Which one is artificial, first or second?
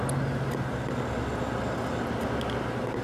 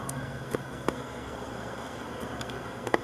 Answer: second